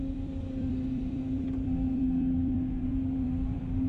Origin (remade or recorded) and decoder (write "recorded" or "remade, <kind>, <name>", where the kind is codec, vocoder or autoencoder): remade, vocoder, BigVGAN v2